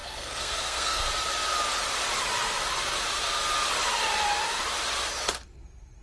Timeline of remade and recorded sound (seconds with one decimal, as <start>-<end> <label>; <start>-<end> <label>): 0.0-1.1 remade; 1.1-6.0 recorded